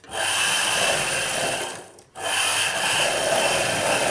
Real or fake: real